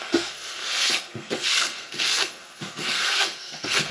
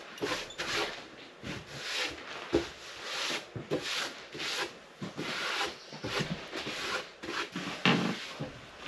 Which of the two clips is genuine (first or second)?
second